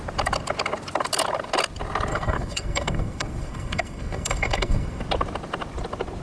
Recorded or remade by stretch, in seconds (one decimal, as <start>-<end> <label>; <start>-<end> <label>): 0.0-2.1 recorded; 2.1-5.0 remade; 5.0-6.2 recorded